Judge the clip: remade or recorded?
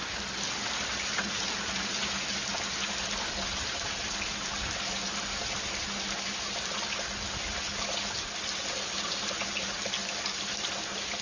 recorded